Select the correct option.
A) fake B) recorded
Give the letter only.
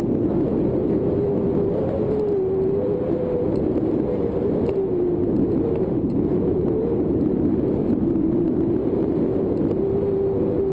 B